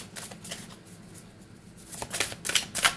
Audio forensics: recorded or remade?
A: recorded